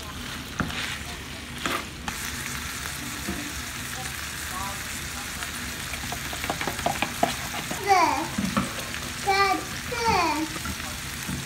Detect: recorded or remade recorded